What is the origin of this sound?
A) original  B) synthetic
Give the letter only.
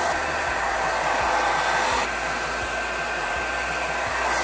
A